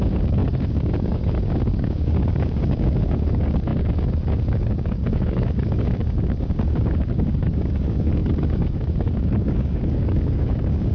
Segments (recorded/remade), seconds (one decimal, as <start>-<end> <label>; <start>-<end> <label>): 0.0-10.9 remade